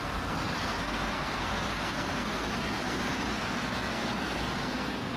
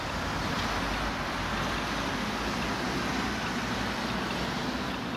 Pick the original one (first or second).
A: second